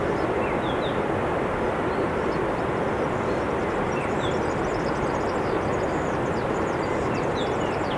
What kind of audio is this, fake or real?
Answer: fake